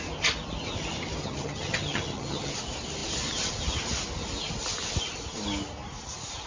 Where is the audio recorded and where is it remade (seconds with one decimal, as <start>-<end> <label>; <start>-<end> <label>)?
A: 0.0-1.2 recorded; 1.2-2.5 remade; 2.5-6.5 recorded